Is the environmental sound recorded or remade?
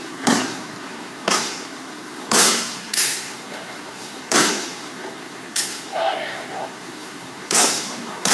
remade